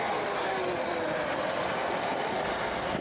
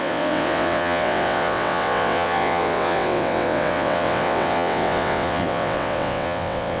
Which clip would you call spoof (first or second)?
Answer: second